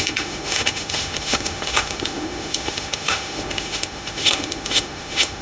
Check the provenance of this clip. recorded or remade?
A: remade